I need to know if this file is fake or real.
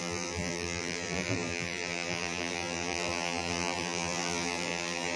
fake